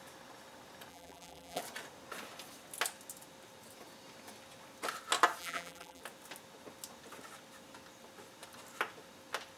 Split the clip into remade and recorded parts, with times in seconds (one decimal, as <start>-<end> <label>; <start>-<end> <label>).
0.0-0.9 recorded; 0.9-1.6 remade; 1.6-5.4 recorded; 5.4-6.0 remade; 6.0-9.6 recorded